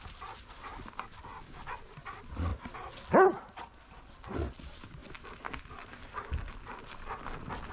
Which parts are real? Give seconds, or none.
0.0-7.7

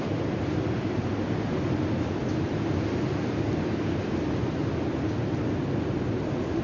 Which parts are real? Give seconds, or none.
0.0-6.6

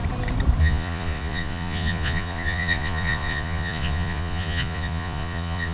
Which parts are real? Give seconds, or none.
0.0-0.6

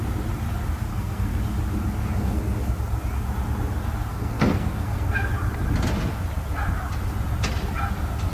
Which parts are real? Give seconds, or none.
0.0-0.9; 1.4-2.0; 2.7-4.1; 5.3-8.3

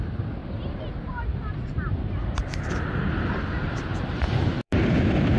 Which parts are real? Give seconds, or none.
0.0-0.4; 2.7-3.9